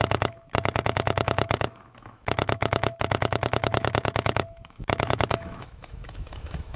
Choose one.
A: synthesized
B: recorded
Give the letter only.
A